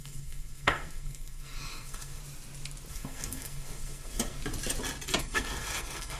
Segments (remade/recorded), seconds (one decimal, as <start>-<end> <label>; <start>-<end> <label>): 0.0-2.2 remade; 2.2-2.9 recorded; 2.9-4.4 remade; 4.4-5.2 recorded; 5.2-6.2 remade